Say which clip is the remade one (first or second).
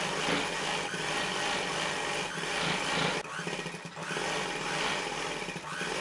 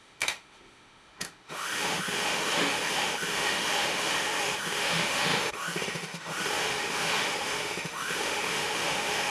second